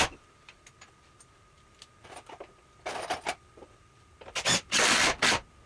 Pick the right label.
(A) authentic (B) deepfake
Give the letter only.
A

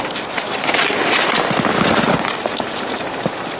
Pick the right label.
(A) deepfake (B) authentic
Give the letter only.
B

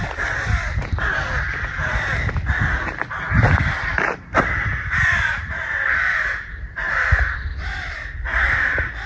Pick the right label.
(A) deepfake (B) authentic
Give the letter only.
A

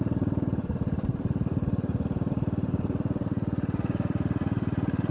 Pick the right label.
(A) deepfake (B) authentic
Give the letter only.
B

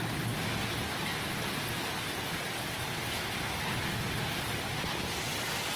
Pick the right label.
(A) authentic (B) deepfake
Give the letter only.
A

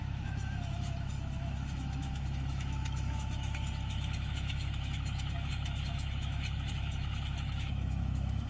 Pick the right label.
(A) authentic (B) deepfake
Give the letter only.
B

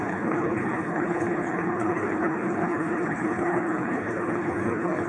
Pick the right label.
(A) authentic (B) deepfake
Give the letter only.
B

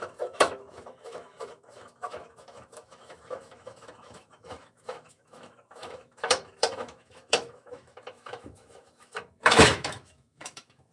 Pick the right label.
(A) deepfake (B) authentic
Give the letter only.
A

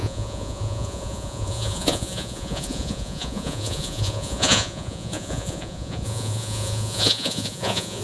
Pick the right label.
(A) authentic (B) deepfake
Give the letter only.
B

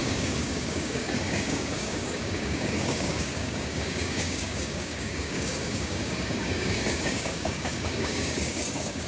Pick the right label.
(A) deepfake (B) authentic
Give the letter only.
A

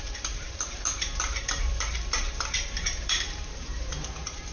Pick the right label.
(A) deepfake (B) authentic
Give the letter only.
A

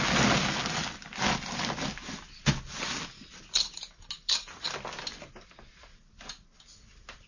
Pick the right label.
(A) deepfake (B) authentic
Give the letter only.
B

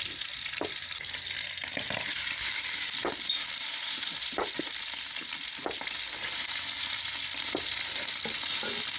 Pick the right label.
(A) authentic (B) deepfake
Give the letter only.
B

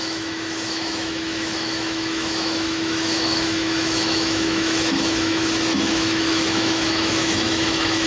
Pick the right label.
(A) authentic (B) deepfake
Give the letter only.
B